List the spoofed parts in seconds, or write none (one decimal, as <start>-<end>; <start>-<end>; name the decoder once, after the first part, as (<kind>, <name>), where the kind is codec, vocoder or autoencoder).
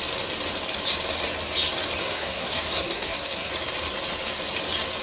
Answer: 2.0-3.5 (codec, SNAC)